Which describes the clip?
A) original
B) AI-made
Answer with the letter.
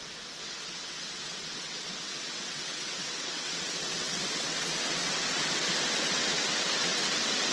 B